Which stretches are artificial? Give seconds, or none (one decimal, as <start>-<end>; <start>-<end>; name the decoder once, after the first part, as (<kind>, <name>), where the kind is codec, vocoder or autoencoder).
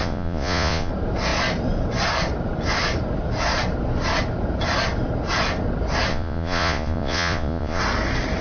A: 0.0-0.9 (vocoder, Vocos); 6.1-7.8